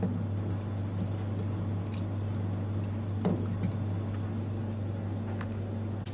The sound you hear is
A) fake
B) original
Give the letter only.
B